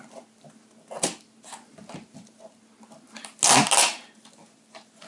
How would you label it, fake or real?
real